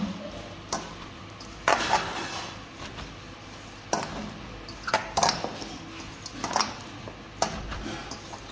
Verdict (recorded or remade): recorded